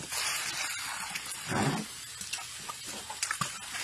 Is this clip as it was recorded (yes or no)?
yes